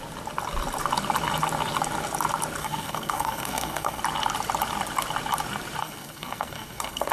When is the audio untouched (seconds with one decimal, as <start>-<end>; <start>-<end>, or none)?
0.0-2.6; 4.0-5.8